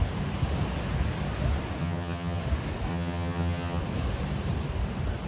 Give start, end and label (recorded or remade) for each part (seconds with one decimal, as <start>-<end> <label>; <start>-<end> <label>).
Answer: 0.0-1.8 recorded; 1.8-2.4 remade; 2.4-2.9 recorded; 2.9-3.8 remade; 3.8-5.3 recorded